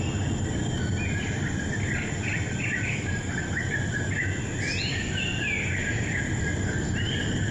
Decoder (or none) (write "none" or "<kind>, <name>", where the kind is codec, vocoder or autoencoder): none